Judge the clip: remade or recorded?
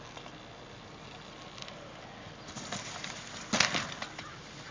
recorded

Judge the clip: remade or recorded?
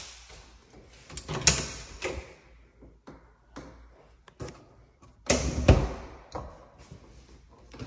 recorded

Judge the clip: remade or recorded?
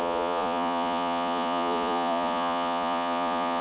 remade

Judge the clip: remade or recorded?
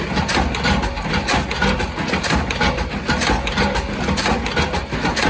recorded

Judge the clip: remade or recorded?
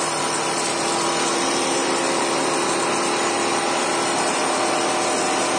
recorded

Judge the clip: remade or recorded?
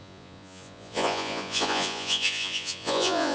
remade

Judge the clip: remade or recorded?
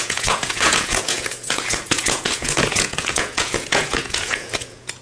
remade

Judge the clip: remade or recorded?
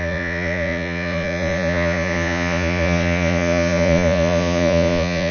remade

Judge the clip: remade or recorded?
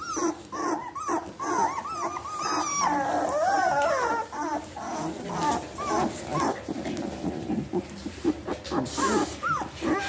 recorded